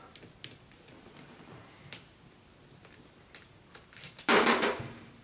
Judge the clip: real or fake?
real